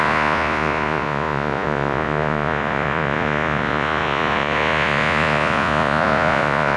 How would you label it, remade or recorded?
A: remade